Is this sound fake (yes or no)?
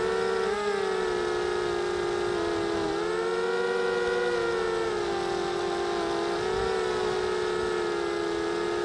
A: no